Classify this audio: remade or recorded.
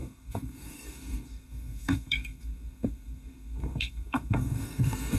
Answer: remade